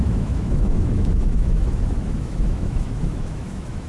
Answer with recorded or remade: remade